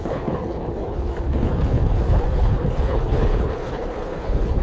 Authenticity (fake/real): fake